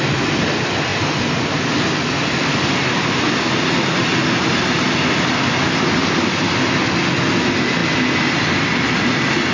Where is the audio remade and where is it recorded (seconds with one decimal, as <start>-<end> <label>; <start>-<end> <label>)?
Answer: 0.0-9.5 recorded